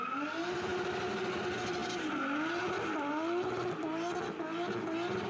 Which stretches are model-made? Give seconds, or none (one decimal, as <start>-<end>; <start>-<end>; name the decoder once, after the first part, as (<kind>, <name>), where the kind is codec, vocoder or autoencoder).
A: 0.7-1.4 (vocoder, BigVGAN v2)